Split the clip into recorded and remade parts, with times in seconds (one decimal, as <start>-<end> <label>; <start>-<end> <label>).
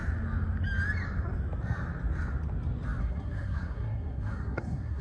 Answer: 0.0-3.0 recorded; 3.0-5.0 remade